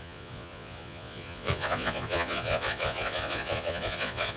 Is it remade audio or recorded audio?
remade